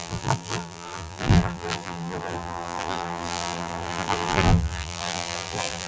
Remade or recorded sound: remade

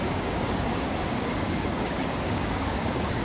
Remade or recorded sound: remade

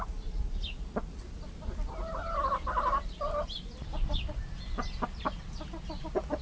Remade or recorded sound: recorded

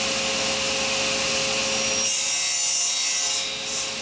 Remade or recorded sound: recorded